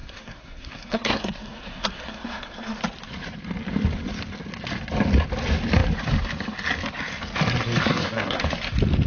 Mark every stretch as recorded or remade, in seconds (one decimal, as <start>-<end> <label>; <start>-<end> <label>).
0.0-2.8 remade; 2.8-7.9 recorded; 7.9-8.4 remade; 8.4-9.1 recorded